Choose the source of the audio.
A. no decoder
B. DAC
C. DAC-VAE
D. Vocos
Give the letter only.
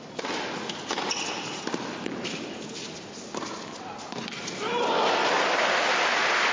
A